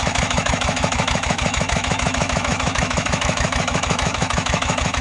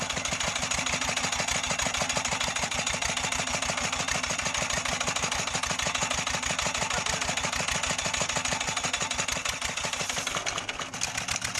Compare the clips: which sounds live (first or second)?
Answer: second